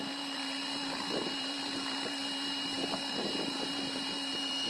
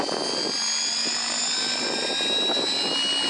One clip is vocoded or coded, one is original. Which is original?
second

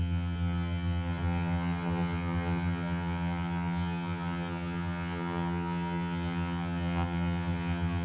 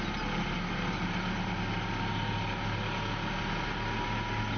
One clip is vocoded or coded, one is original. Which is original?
second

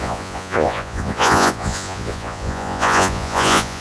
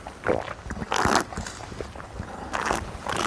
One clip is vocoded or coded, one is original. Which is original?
second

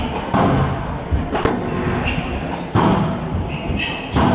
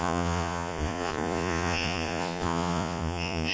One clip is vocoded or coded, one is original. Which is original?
first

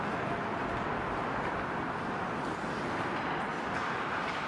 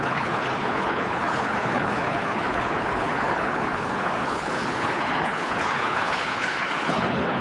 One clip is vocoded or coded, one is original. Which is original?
first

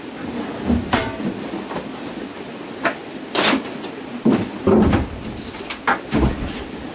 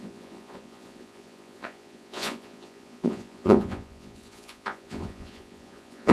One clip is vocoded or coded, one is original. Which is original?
first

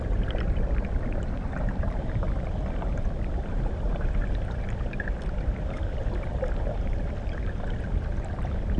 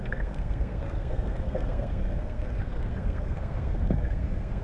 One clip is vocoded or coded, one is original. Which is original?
first